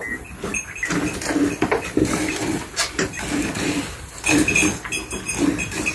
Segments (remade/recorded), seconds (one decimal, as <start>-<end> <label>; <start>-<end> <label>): 0.0-0.5 recorded; 0.5-3.8 remade; 3.8-5.9 recorded